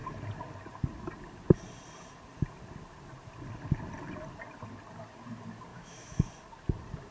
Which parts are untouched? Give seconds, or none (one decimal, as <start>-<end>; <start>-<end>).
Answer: 0.0-5.7; 6.3-7.1